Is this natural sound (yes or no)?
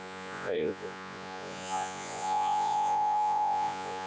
no